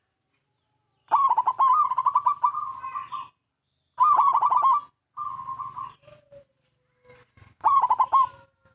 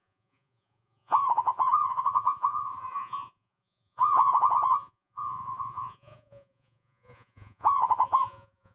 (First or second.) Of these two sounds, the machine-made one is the second